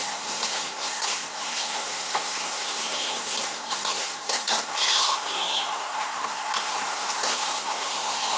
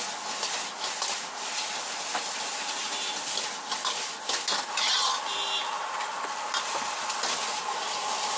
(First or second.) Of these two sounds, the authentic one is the second